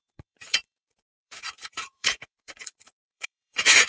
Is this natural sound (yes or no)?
no